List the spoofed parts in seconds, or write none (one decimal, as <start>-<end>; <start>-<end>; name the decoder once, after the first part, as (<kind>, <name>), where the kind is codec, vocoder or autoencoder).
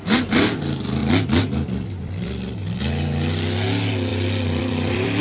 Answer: 1.0-2.8 (vocoder, BigVGAN v2); 4.1-5.2